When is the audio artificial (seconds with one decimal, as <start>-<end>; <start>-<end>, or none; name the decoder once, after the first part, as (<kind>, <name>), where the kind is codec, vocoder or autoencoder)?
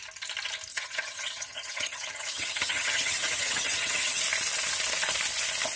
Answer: 0.7-4.2 (vocoder, HiFi-GAN)